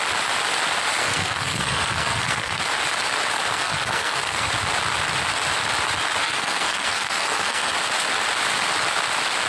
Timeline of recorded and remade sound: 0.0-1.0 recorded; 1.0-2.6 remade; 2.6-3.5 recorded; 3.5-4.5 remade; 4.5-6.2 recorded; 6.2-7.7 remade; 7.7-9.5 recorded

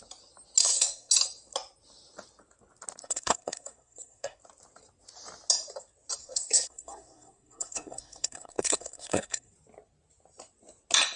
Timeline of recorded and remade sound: 0.0-0.6 recorded; 0.6-1.1 remade; 1.1-3.0 recorded; 3.0-4.4 remade; 4.4-6.2 recorded; 6.2-9.5 remade; 9.5-11.2 recorded

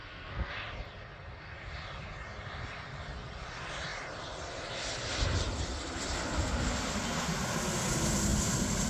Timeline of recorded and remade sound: 0.0-0.5 remade; 0.5-8.9 recorded

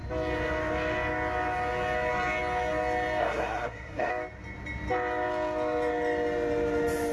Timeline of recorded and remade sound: 0.0-3.2 recorded; 3.2-4.1 remade; 4.1-7.1 recorded